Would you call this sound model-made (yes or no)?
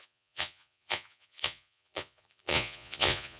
yes